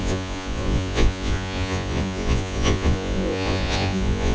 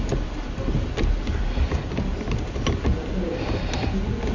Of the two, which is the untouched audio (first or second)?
second